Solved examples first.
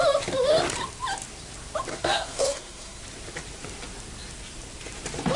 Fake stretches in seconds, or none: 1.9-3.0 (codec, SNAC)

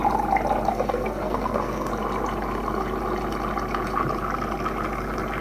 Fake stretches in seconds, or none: 0.7-1.9 (codec, SNAC)

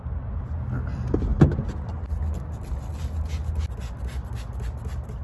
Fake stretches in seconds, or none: none

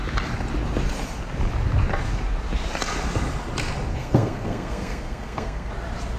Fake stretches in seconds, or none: 3.9-5.7 (codec, SNAC)

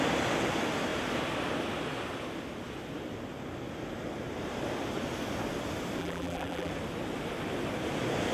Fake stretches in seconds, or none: 6.0-6.7 (vocoder, BigVGAN v2)

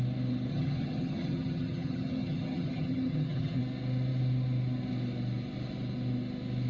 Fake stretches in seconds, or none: 0.5-3.6 (vocoder, HiFi-GAN)